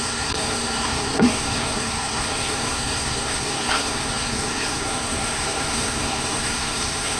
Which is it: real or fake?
fake